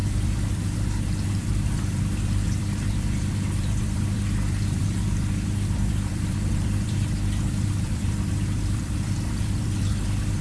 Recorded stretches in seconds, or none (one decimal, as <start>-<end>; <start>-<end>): none